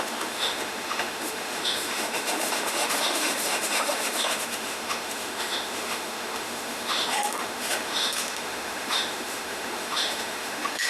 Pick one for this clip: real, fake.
fake